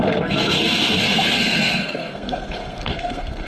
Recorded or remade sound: remade